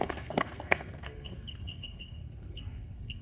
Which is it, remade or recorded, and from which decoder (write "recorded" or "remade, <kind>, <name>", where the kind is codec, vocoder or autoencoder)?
remade, codec, SNAC